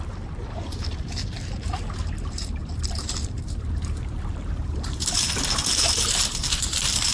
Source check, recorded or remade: remade